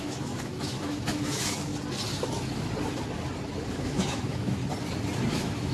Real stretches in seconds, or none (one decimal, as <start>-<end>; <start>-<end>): 1.7-3.7; 4.6-5.3

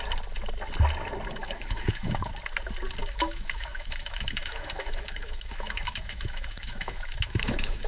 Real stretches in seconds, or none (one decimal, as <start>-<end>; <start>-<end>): 0.0-1.4; 2.3-3.0

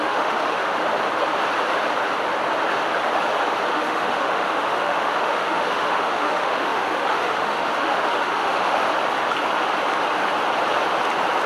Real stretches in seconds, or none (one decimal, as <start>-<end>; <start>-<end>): 0.7-3.7; 8.8-11.5

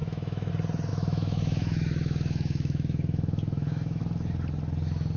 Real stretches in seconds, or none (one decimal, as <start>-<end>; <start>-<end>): 0.5-0.9; 4.0-5.2

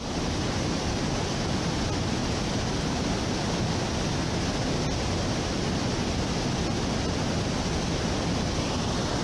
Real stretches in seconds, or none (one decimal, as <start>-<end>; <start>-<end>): 0.0-9.2